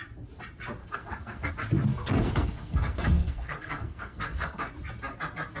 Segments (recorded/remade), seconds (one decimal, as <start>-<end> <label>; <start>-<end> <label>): 0.0-0.8 recorded; 0.8-1.5 remade; 1.5-1.9 recorded; 1.9-4.7 remade; 4.7-5.6 recorded